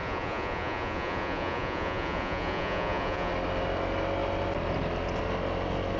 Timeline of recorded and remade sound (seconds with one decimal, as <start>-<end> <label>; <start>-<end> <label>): 0.0-3.3 remade; 3.3-6.0 recorded